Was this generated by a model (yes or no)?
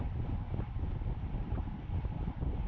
no